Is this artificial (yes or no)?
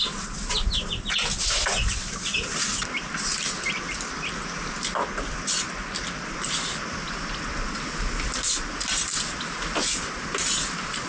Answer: no